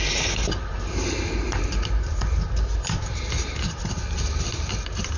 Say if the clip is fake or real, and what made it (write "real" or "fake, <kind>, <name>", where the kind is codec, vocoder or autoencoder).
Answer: real